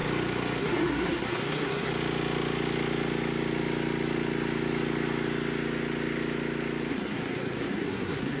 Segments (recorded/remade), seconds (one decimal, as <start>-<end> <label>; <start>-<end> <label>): 0.0-0.6 recorded; 0.6-1.9 remade; 1.9-6.9 recorded; 6.9-8.4 remade